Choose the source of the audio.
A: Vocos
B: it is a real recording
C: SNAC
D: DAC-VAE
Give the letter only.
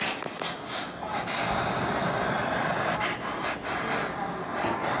B